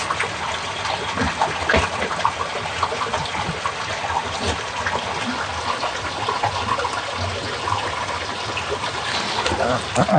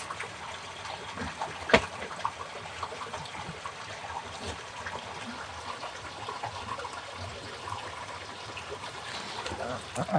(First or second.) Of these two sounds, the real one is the first